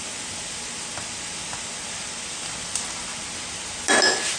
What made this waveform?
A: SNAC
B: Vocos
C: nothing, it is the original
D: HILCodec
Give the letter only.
C